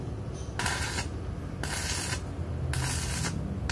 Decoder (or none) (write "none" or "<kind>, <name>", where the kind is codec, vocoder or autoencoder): none